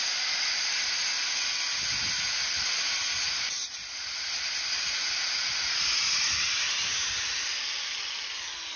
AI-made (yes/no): no